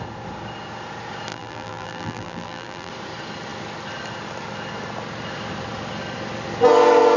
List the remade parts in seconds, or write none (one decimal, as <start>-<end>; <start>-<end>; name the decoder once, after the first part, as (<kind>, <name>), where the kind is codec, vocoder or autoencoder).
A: 1.3-2.9 (vocoder, BigVGAN v2)